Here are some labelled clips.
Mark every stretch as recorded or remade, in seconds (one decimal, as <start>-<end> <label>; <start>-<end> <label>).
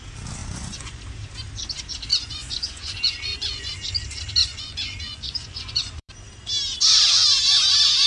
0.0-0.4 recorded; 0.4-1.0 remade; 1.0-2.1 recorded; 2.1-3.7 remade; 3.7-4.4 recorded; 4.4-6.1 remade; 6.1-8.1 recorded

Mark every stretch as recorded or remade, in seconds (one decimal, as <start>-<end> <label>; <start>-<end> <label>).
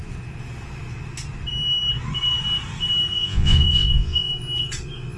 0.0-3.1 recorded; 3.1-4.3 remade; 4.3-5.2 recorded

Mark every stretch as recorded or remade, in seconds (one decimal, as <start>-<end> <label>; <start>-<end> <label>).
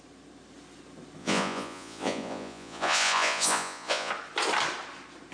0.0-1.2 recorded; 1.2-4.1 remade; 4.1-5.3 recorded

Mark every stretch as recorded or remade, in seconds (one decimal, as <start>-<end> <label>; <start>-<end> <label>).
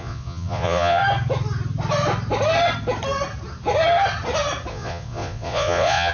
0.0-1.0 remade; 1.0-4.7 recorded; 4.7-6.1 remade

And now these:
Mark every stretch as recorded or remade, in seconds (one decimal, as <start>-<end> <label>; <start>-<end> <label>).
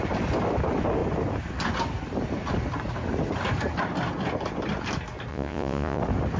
0.0-5.3 recorded; 5.3-6.0 remade; 6.0-6.4 recorded